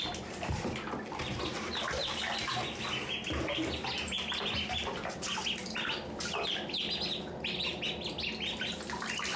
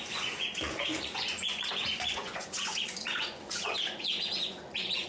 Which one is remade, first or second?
second